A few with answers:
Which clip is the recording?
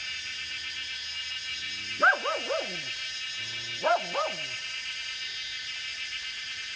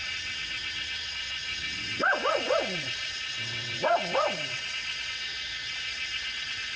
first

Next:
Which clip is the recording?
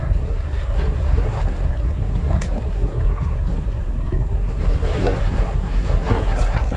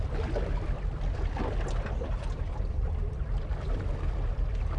second